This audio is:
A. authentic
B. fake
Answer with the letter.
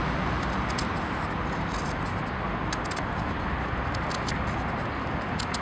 A